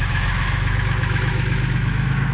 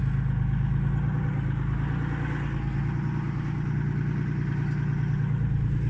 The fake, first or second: first